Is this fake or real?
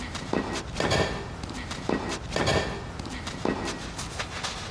real